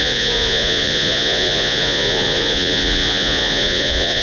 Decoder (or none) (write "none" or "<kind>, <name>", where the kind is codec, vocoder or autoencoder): vocoder, Vocos